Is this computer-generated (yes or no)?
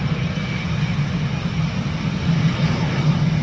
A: no